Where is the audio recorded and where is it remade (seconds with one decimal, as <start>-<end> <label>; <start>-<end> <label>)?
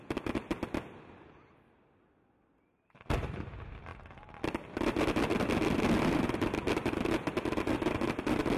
0.0-8.6 recorded